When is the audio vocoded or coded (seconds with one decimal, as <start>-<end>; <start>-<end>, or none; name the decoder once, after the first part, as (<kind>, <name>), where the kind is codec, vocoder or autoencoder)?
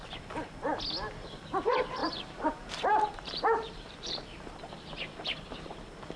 2.0-5.7 (vocoder, BigVGAN v2)